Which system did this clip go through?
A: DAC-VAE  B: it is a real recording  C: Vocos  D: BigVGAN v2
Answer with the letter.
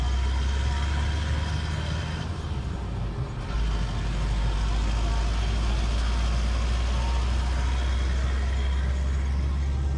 B